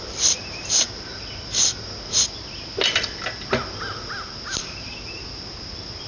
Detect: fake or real real